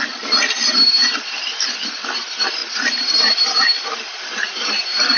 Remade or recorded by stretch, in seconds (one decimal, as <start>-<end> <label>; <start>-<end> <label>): 0.0-2.6 recorded; 2.6-4.7 remade; 4.7-5.2 recorded